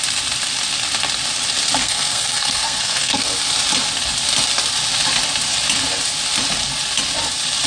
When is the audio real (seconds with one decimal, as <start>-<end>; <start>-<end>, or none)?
0.0-1.8; 3.3-7.7